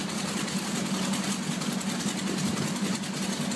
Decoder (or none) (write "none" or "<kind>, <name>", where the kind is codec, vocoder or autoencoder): none